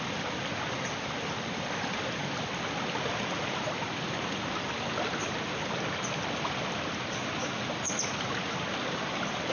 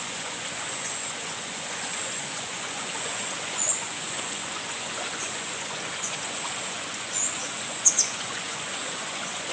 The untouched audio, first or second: first